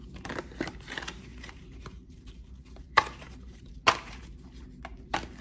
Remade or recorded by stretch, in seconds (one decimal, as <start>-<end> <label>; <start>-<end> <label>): 0.0-1.3 recorded; 1.3-3.8 remade; 3.8-5.4 recorded